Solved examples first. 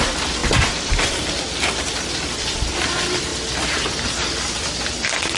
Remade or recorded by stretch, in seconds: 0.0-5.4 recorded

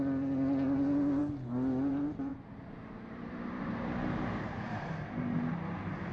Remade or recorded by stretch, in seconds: 0.0-2.3 recorded; 2.3-6.1 remade